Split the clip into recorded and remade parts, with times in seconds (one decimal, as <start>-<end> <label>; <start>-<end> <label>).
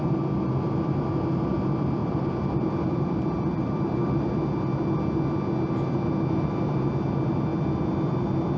0.0-2.0 recorded; 2.0-4.3 remade; 4.3-8.6 recorded